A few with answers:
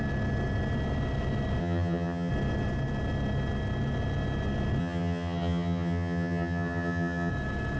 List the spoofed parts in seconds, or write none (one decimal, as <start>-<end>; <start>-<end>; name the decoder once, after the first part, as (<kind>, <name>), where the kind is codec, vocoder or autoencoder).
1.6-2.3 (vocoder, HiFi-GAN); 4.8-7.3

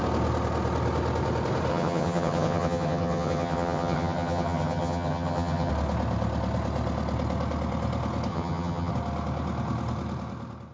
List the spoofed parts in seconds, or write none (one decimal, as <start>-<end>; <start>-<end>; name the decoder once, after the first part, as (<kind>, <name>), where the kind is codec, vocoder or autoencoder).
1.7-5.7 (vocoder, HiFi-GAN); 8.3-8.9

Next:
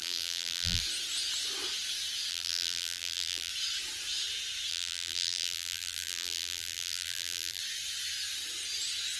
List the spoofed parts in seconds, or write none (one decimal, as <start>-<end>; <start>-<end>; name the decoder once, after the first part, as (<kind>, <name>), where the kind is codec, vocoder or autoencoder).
0.0-0.8 (vocoder, BigVGAN v2); 2.3-3.5; 4.7-7.6

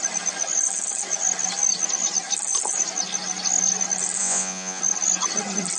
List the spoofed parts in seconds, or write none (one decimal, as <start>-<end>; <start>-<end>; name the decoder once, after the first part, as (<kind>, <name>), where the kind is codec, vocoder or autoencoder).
4.2-4.8 (vocoder, Vocos)